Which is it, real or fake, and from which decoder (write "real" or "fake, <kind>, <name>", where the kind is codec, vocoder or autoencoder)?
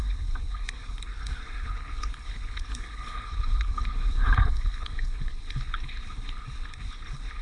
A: fake, codec, HILCodec